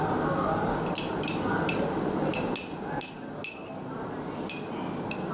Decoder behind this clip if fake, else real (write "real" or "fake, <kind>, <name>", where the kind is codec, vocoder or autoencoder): real